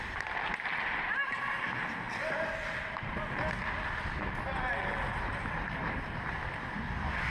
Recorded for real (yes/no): yes